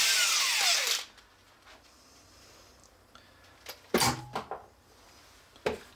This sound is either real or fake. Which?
real